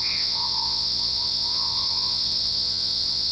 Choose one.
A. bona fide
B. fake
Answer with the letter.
B